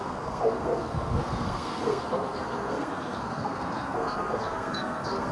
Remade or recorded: remade